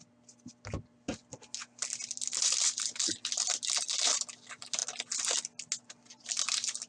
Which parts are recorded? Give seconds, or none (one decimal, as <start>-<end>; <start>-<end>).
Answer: 0.0-6.9